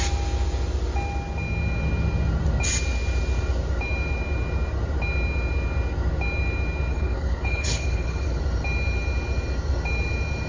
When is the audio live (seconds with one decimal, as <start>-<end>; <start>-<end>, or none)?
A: 0.0-6.9; 8.4-10.5

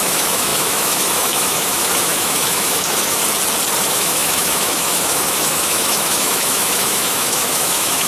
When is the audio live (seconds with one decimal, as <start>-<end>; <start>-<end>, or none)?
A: 3.2-3.8

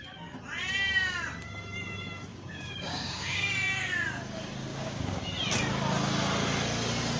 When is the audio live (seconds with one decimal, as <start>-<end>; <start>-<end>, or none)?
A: 0.0-2.3; 3.9-4.7; 5.2-7.2

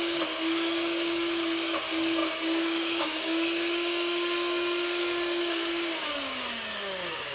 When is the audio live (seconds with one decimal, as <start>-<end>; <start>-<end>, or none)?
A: none

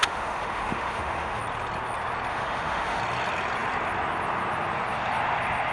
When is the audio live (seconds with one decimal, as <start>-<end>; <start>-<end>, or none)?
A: 1.4-2.3; 3.0-5.7

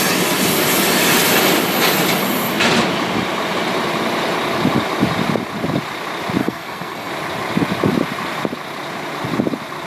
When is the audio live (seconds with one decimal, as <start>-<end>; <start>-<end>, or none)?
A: 0.0-6.4; 7.1-9.9